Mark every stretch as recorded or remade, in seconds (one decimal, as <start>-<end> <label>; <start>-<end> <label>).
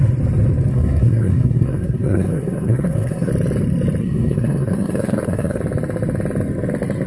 0.0-0.7 recorded; 0.7-3.3 remade; 3.3-4.0 recorded; 4.0-5.6 remade; 5.6-7.1 recorded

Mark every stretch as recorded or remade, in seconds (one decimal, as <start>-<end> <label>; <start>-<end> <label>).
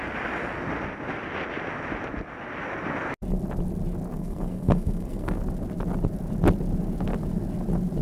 0.0-4.1 recorded; 4.1-5.4 remade; 5.4-8.0 recorded